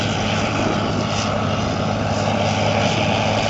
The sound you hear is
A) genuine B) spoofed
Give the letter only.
A